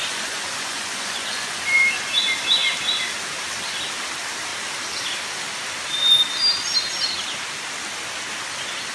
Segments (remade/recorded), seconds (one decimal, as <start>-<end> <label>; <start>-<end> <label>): 0.0-2.1 remade; 2.1-8.9 recorded

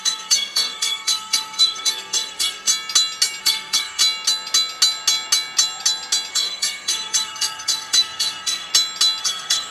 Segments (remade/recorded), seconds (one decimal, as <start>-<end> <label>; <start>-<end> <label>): 0.0-2.7 remade; 2.7-3.4 recorded; 3.4-4.0 remade; 4.0-6.3 recorded; 6.3-8.7 remade; 8.7-9.2 recorded; 9.2-9.7 remade